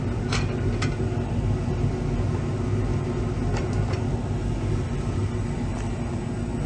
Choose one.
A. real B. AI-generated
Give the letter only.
A